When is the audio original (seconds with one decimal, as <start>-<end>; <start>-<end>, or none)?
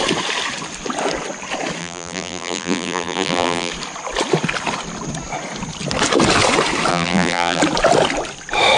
0.0-1.8; 3.7-6.9; 7.6-8.8